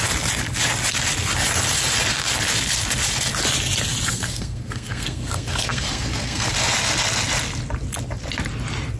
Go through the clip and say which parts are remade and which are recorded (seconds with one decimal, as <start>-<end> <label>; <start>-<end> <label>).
0.0-4.1 recorded; 4.1-6.5 remade; 6.5-9.0 recorded